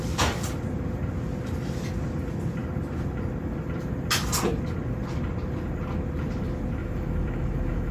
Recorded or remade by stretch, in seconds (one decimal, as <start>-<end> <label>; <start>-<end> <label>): 0.0-6.8 recorded; 6.8-7.9 remade